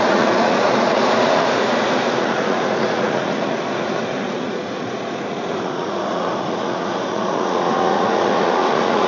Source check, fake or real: fake